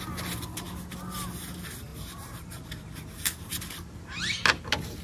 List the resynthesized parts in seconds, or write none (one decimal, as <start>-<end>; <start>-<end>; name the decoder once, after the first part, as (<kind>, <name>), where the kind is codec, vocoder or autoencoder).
1.9-2.7 (vocoder, BigVGAN v2)